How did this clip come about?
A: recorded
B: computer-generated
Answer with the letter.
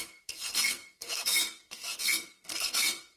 B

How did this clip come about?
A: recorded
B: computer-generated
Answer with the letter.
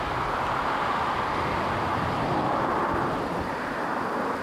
A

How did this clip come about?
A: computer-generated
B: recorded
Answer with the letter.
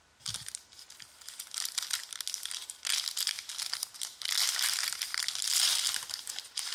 B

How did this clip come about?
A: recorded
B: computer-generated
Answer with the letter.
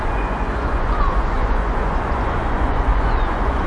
B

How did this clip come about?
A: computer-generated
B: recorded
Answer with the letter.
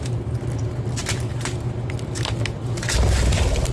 B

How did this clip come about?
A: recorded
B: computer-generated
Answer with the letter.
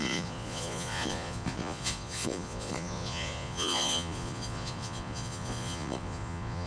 B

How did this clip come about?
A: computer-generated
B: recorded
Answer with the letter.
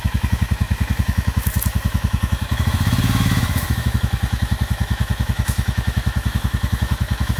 A